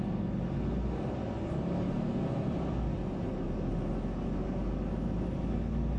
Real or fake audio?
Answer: real